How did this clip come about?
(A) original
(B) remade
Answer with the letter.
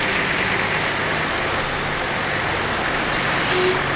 A